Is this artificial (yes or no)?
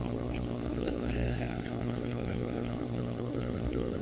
yes